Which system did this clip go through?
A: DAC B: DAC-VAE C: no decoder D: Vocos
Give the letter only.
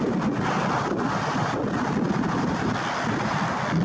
C